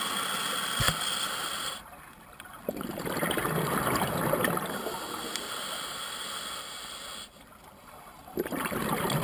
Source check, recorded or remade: recorded